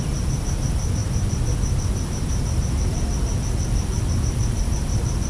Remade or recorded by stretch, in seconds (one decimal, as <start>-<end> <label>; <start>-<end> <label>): 0.0-5.3 recorded